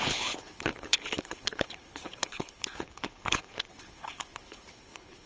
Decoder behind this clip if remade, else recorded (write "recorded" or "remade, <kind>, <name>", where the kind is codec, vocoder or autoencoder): remade, codec, HILCodec